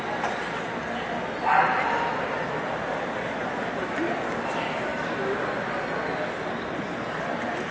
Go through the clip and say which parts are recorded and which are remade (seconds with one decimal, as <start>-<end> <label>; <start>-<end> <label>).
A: 0.0-7.7 recorded